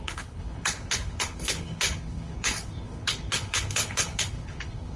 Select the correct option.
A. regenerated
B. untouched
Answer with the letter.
A